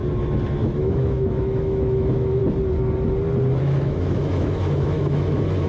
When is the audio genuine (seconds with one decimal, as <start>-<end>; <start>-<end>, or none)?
0.0-0.8; 2.4-3.6